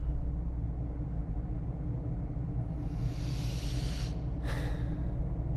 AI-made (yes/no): no